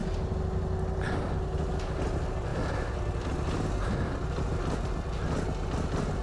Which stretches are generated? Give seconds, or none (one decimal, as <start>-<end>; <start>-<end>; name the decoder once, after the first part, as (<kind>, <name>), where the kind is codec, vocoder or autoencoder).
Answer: none